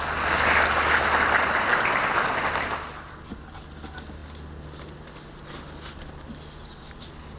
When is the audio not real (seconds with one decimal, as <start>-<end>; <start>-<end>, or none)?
none